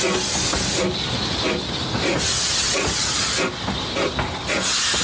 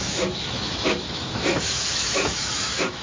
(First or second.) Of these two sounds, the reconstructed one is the second